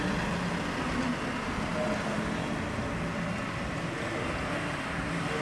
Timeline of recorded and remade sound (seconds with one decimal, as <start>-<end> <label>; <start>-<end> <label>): 0.0-5.4 recorded